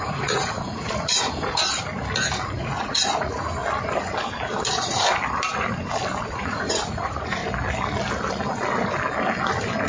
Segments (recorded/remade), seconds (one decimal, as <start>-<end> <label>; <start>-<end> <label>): 0.0-1.6 remade; 1.6-2.6 recorded; 2.6-3.6 remade; 3.6-6.2 recorded; 6.2-7.4 remade; 7.4-9.9 recorded